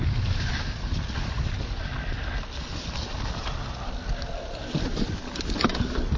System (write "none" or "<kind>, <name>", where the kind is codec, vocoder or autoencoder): none